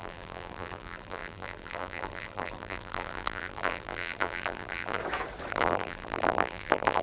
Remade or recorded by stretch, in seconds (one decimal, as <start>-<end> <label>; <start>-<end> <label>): 0.0-5.0 remade; 5.0-5.5 recorded; 5.5-7.0 remade